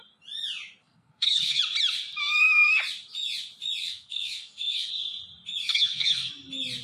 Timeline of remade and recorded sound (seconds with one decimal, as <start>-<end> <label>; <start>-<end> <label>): 0.0-0.8 recorded; 0.8-1.6 remade; 1.6-2.2 recorded; 2.2-2.8 remade; 2.8-3.8 recorded; 3.8-4.9 remade; 4.9-5.6 recorded; 5.6-6.3 remade; 6.3-6.8 recorded